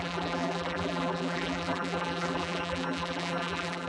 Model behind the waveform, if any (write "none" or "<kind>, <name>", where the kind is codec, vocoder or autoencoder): vocoder, BigVGAN v2